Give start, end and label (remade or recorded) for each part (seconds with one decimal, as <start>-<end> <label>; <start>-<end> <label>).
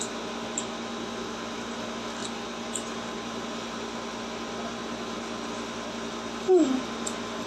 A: 0.0-7.5 recorded